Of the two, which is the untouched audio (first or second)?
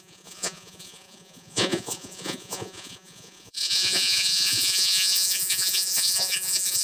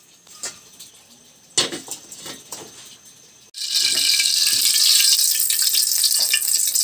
second